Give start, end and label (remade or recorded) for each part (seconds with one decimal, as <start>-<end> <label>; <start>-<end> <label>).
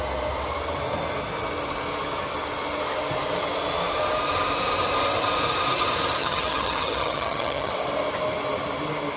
0.0-6.2 recorded; 6.2-7.7 remade; 7.7-9.2 recorded